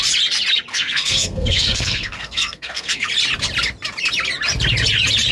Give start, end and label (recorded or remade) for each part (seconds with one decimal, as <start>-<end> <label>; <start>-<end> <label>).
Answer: 0.0-0.7 recorded; 0.7-3.1 remade; 3.1-5.3 recorded